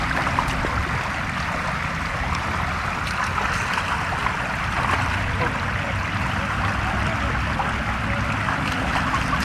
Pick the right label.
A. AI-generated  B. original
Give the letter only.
B